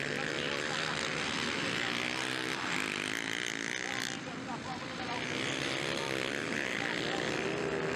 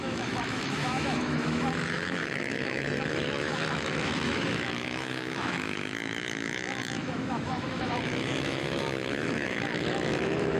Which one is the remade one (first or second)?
second